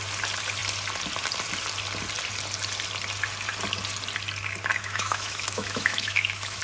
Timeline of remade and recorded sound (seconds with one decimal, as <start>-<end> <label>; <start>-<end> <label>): 0.0-4.7 recorded; 4.7-6.6 remade